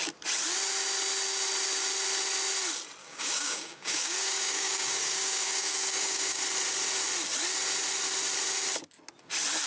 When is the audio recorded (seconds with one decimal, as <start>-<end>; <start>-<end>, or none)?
0.0-3.0; 6.4-9.7